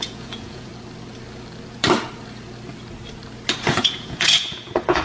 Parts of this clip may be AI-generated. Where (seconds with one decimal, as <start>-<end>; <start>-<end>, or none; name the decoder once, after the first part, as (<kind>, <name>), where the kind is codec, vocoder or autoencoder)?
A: 0.0-0.7 (vocoder, Vocos); 3.7-5.0